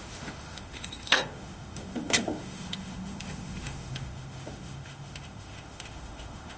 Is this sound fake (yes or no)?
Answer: yes